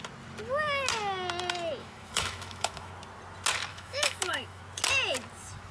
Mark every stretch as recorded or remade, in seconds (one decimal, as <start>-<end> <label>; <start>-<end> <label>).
0.0-1.8 recorded; 1.8-2.9 remade; 2.9-3.7 recorded; 3.7-4.6 remade; 4.6-5.7 recorded